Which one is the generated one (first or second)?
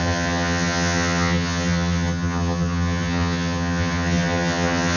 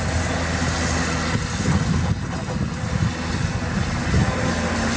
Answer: first